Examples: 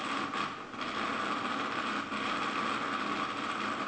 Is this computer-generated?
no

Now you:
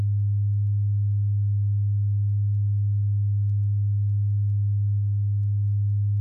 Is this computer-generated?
no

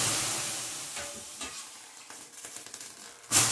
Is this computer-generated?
no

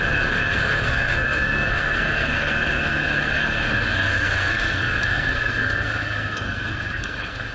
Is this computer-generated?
yes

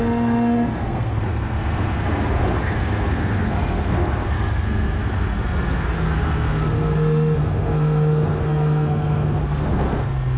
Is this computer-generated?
yes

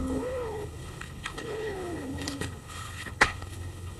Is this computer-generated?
yes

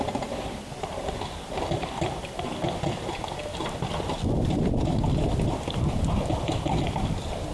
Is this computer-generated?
no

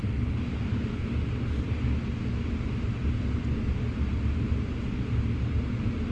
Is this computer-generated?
no